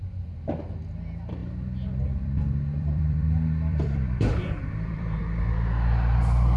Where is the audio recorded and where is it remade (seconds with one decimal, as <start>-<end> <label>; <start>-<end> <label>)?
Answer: 0.0-1.4 recorded; 1.4-5.2 remade; 5.2-6.6 recorded